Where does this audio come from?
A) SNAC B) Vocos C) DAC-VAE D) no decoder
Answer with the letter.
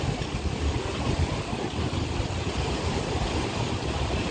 D